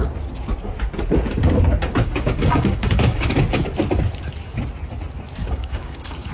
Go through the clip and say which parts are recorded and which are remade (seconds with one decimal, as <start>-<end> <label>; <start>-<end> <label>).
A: 0.0-1.8 recorded; 1.8-3.4 remade; 3.4-5.4 recorded; 5.4-6.3 remade

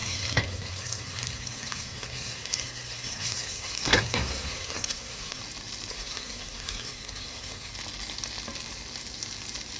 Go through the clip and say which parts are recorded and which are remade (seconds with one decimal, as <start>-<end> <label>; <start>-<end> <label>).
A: 0.0-5.4 remade; 5.4-5.9 recorded; 5.9-7.7 remade; 7.7-9.8 recorded

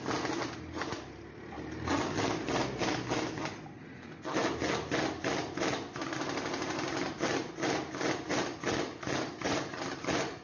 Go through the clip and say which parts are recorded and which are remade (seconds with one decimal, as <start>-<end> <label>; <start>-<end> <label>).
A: 0.0-10.4 recorded

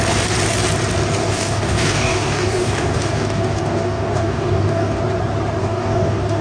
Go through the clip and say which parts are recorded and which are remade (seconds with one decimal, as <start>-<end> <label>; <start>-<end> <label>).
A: 0.0-1.2 recorded; 1.2-5.0 remade; 5.0-5.6 recorded; 5.6-6.4 remade

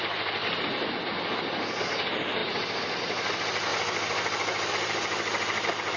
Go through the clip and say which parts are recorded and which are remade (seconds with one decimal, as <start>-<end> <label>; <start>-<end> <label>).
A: 0.0-0.4 recorded; 0.4-0.9 remade; 0.9-6.0 recorded

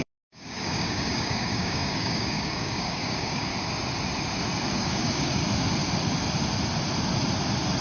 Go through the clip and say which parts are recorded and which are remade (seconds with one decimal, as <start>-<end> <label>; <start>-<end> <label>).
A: 0.0-3.5 remade; 3.5-4.7 recorded; 4.7-5.4 remade; 5.4-7.8 recorded